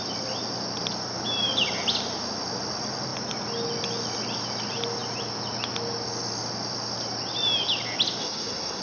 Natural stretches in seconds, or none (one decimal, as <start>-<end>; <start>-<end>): 0.0-8.2